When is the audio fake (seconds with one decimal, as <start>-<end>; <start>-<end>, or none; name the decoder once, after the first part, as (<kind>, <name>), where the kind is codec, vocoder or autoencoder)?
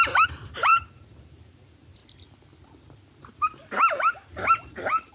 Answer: 0.0-0.7 (vocoder, BigVGAN v2); 1.2-2.0